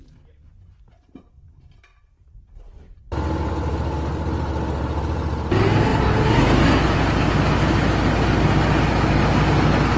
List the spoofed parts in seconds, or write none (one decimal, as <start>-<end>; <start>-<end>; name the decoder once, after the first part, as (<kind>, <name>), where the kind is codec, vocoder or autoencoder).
none